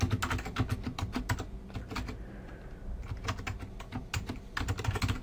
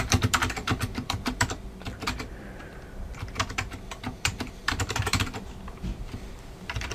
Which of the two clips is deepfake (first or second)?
second